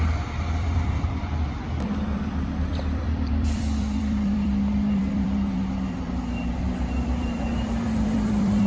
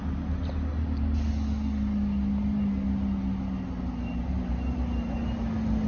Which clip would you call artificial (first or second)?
first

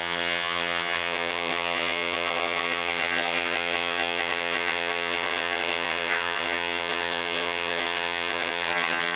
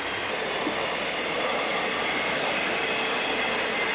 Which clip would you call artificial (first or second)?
first